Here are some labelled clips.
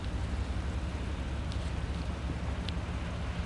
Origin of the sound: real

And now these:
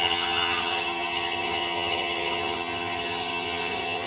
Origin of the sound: fake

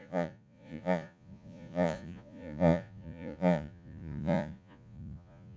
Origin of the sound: fake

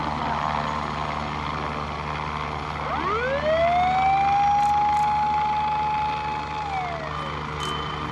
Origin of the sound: real